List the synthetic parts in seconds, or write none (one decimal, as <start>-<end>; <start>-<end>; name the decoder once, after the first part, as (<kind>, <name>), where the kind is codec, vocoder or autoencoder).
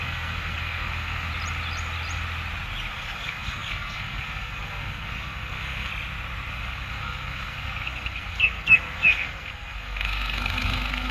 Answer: 0.0-1.3 (codec, SNAC); 2.9-5.9; 6.5-11.1